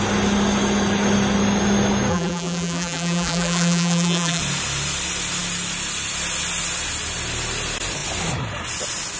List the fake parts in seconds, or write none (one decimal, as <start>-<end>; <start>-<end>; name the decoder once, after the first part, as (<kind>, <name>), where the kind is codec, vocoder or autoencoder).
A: 2.1-4.4 (vocoder, BigVGAN v2)